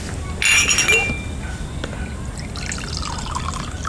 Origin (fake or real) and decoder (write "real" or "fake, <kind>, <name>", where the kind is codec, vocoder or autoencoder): real